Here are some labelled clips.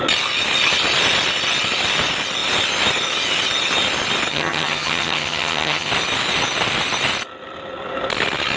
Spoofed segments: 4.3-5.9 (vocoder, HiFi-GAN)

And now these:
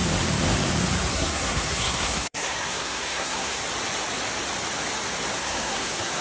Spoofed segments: 1.1-3.6 (codec, SNAC); 5.3-6.2